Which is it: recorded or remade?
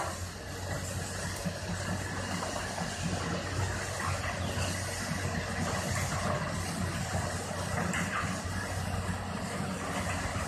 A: recorded